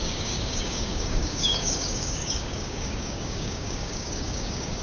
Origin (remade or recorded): remade